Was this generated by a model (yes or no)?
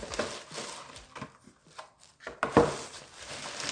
no